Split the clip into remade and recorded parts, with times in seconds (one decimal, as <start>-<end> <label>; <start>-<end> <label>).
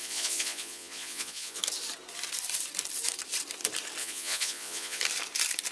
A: 0.0-1.6 remade; 1.6-4.0 recorded; 4.0-5.0 remade; 5.0-5.7 recorded